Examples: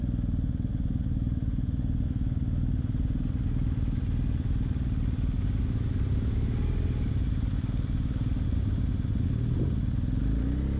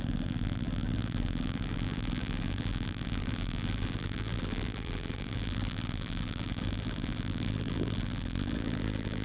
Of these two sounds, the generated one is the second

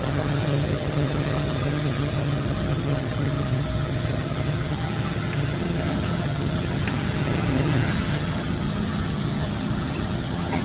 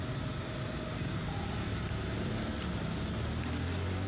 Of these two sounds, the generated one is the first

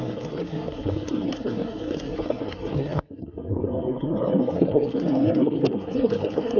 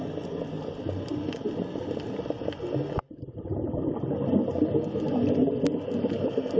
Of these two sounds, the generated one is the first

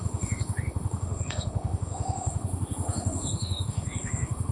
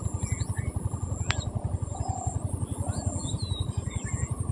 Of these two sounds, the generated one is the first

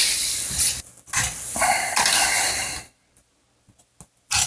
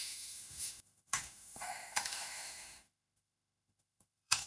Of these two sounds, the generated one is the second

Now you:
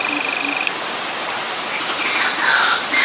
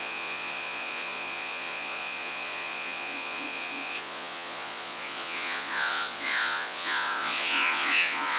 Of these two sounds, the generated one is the second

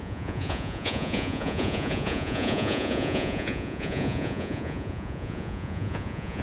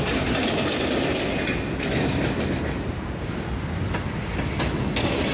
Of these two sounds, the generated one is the first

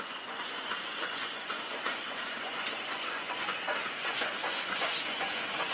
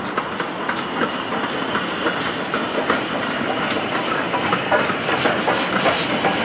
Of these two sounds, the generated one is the first